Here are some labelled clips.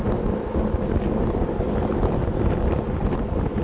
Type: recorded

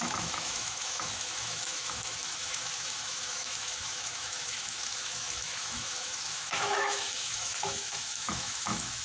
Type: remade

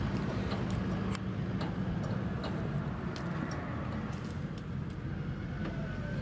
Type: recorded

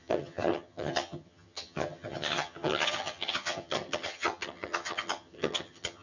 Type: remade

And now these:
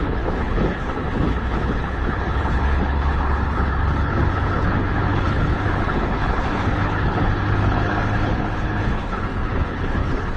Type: remade